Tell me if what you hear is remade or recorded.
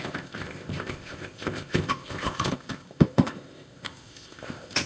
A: remade